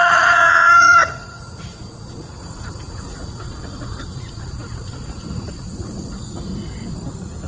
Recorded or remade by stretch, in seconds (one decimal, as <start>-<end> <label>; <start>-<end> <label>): 0.0-6.5 remade; 6.5-7.1 recorded; 7.1-7.5 remade